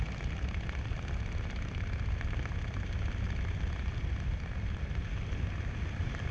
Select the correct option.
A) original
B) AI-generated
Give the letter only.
A